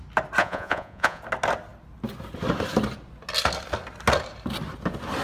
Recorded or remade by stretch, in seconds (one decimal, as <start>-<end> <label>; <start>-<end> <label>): 0.0-0.4 recorded; 0.4-1.2 remade; 1.2-5.2 recorded